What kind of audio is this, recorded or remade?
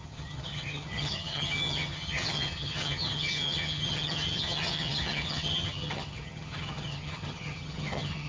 remade